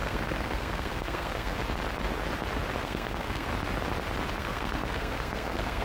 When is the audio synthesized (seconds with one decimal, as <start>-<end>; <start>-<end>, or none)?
0.0-1.6; 2.8-3.5; 4.4-5.8